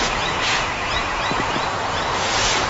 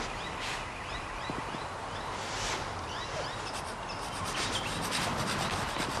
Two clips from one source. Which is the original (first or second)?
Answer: second